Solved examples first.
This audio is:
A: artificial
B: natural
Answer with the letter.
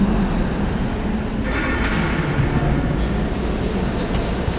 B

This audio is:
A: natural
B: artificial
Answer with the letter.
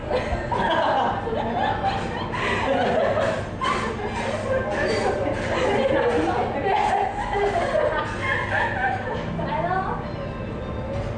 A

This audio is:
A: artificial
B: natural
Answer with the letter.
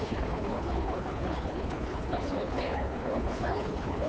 A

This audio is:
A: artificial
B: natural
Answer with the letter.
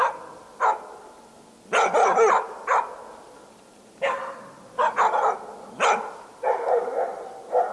B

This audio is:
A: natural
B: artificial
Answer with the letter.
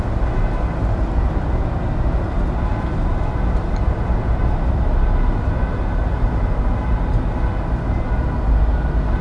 A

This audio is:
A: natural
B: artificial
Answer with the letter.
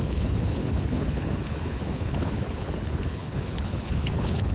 B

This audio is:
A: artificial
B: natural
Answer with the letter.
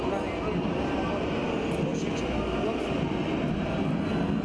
B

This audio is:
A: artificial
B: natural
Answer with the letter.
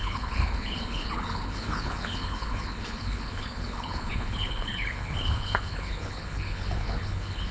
A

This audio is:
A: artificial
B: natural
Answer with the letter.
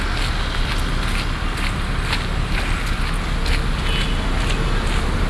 B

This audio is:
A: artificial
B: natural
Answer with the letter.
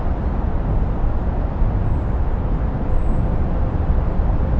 B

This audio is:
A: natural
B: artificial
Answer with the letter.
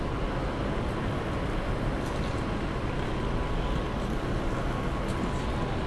A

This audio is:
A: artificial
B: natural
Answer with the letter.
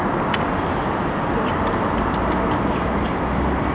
B